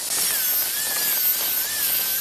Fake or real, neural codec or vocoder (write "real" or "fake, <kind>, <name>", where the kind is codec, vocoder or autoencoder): real